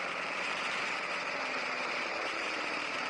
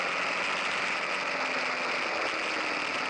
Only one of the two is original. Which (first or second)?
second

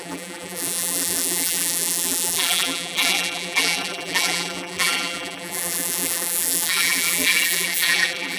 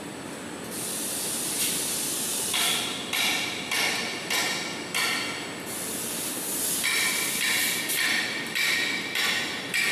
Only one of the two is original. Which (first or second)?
second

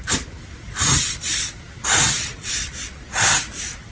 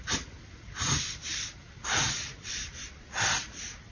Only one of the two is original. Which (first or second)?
first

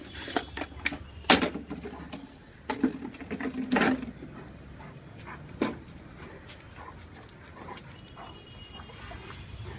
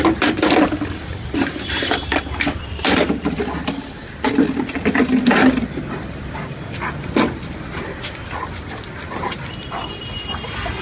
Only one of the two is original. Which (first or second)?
first